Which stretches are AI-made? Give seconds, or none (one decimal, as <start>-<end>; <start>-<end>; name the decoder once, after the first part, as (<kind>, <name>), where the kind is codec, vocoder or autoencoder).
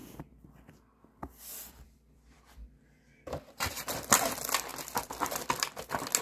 0.0-3.7 (vocoder, BigVGAN v2); 4.7-5.8